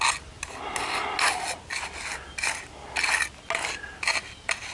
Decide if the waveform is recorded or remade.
recorded